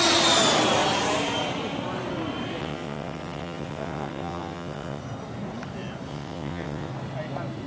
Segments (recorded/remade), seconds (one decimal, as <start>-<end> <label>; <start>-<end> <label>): 0.0-2.6 recorded; 2.6-5.0 remade; 5.0-6.1 recorded; 6.1-6.9 remade; 6.9-7.7 recorded